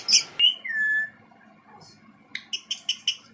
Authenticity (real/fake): real